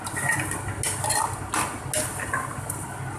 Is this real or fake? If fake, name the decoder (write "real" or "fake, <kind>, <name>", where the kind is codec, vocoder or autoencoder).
real